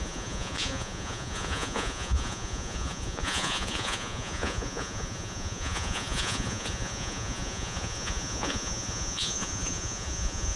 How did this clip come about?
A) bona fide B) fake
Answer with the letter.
B